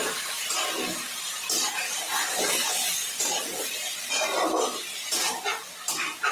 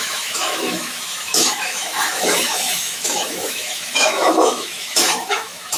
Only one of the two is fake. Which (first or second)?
second